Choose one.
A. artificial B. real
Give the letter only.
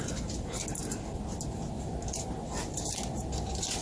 B